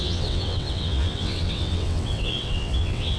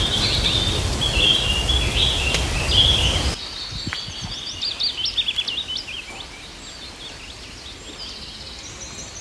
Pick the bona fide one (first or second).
second